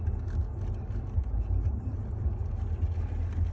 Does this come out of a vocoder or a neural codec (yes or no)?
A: no